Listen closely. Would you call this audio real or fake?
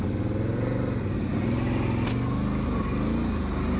real